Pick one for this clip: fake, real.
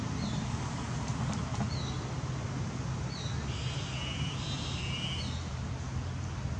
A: real